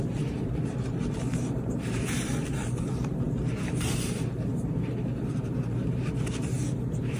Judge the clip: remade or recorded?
remade